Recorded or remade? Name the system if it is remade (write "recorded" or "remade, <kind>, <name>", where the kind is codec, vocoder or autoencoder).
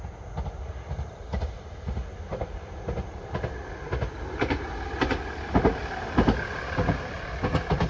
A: recorded